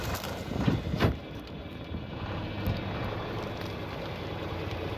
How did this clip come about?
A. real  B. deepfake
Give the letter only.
A